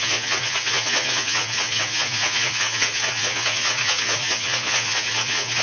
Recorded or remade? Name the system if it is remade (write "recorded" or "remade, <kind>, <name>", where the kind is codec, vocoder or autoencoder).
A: remade, vocoder, Vocos